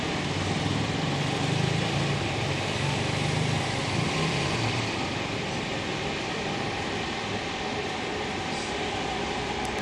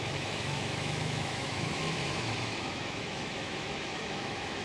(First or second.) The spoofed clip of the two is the second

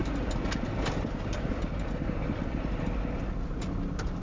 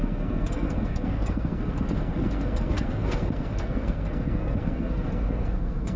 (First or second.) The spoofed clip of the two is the second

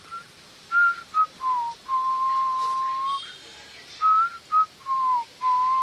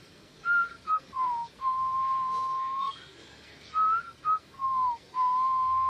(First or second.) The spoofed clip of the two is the second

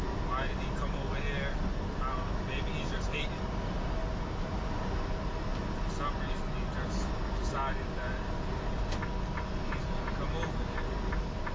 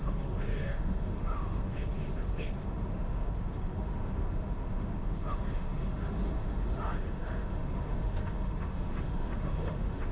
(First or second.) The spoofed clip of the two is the second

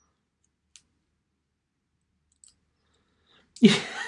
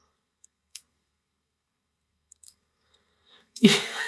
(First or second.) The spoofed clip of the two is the second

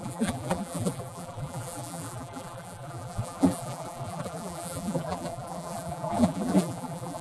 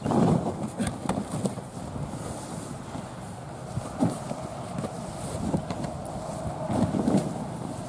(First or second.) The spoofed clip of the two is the first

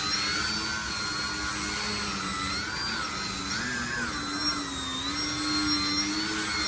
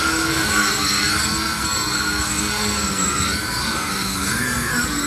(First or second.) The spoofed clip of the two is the second